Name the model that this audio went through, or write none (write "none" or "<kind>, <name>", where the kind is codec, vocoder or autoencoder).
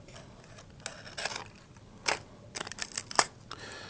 none